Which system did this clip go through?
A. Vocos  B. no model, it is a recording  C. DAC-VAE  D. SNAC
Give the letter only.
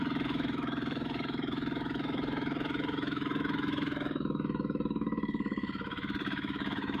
C